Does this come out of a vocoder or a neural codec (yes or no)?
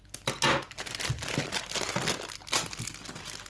no